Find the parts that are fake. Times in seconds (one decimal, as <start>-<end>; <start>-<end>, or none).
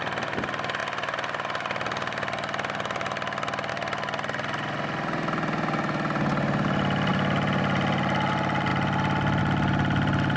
none